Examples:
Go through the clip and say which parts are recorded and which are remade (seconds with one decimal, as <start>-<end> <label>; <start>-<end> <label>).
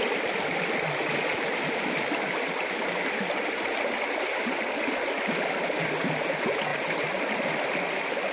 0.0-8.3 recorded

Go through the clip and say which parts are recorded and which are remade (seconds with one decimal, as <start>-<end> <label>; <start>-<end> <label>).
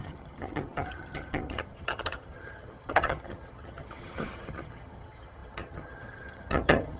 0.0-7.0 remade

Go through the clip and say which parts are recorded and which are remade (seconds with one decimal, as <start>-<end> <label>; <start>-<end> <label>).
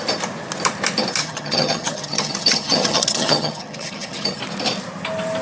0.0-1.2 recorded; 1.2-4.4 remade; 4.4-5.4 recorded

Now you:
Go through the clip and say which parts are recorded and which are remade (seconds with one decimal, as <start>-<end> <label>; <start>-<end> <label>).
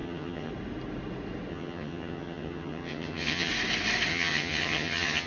0.0-0.5 remade; 0.5-1.5 recorded; 1.5-3.5 remade; 3.5-4.1 recorded; 4.1-5.3 remade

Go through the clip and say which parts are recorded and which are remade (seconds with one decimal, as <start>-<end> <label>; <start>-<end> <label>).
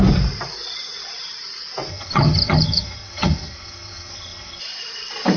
0.0-1.9 recorded; 1.9-4.6 remade; 4.6-5.4 recorded